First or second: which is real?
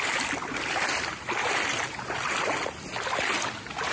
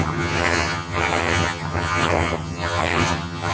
first